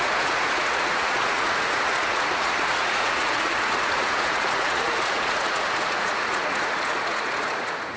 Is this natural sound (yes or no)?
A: no